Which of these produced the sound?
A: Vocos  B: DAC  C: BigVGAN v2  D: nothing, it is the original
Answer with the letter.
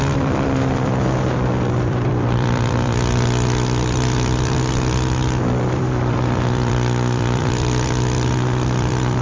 C